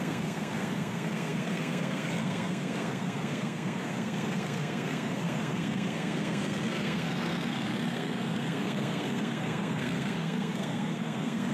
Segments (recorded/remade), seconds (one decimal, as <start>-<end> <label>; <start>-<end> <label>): 0.0-11.5 remade